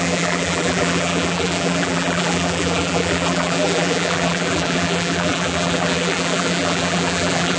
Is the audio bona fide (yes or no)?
no